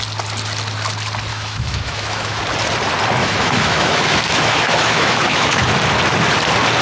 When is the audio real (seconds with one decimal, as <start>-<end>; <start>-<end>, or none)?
0.0-1.3; 2.4-3.2; 5.7-6.8